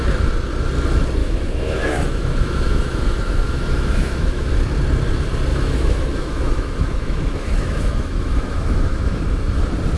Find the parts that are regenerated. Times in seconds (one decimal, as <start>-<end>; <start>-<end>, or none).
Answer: 1.2-4.5; 5.5-9.6